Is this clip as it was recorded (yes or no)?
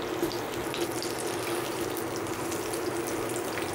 yes